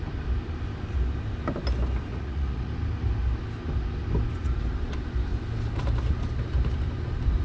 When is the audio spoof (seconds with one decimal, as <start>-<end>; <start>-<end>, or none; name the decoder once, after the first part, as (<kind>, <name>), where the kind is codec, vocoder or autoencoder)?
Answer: 2.1-2.7 (vocoder, Vocos)